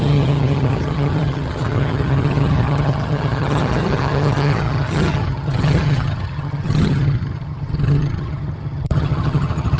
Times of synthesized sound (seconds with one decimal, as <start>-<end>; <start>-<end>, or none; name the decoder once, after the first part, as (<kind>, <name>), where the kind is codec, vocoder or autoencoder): 0.0-9.8 (vocoder, HiFi-GAN)

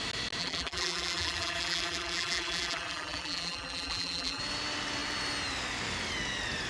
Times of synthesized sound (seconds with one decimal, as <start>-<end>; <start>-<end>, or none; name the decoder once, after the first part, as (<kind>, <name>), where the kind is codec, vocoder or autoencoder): 0.4-4.4 (vocoder, BigVGAN v2)

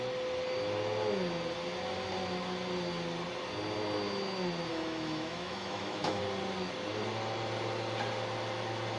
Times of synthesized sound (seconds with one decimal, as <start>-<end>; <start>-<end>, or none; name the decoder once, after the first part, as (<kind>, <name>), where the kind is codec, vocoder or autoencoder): 4.7-6.2 (autoencoder, DAC-VAE)

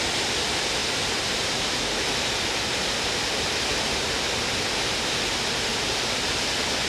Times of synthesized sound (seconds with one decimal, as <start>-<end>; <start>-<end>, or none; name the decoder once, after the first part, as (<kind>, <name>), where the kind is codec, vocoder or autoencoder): 0.8-1.8 (vocoder, BigVGAN v2); 3.7-4.3; 5.7-6.5

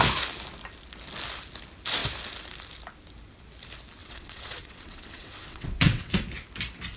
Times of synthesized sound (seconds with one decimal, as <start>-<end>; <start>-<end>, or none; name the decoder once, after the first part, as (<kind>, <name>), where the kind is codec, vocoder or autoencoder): 4.0-6.1 (vocoder, WaveNeXt)

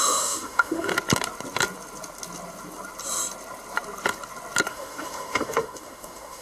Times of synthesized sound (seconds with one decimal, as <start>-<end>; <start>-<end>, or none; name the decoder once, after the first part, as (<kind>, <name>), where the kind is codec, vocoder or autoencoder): 0.0-0.9 (autoencoder, DAC-VAE); 4.7-6.4

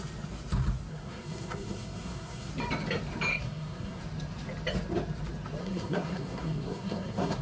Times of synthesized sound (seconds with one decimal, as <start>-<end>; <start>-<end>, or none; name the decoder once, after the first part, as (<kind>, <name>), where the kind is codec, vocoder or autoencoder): 0.9-2.5 (codec, SNAC); 3.3-4.0; 5.6-7.4